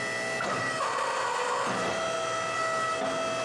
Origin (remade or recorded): recorded